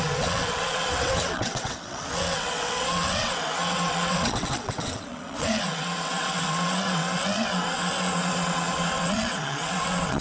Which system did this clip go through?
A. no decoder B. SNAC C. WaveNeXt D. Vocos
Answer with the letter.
C